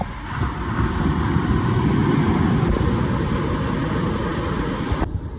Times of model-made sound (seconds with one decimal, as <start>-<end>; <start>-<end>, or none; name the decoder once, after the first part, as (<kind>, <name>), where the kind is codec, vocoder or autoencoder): none